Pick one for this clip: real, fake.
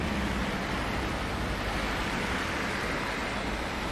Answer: real